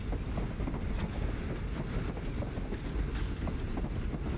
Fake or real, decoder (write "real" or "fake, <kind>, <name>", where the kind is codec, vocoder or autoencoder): real